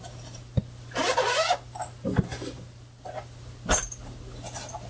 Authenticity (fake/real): real